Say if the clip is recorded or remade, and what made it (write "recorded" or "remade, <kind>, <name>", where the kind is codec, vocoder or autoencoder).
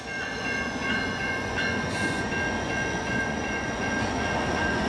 remade, vocoder, Vocos